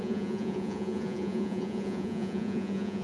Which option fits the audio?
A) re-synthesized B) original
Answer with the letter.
A